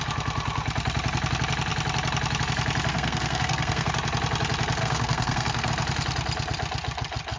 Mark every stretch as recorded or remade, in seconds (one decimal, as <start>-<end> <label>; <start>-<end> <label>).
0.0-2.9 recorded; 2.9-3.9 remade; 3.9-4.8 recorded; 4.8-5.7 remade; 5.7-7.4 recorded